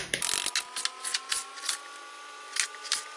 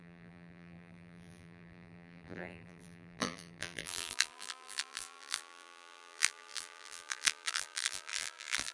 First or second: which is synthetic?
second